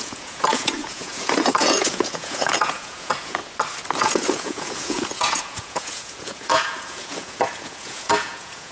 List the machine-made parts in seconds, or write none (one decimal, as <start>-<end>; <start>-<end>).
0.0-3.4; 4.0-8.7

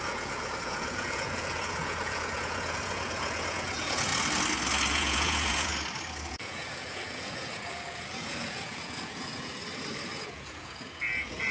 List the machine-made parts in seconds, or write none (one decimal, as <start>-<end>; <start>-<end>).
0.0-4.1; 4.9-5.7; 6.3-9.6; 10.1-11.5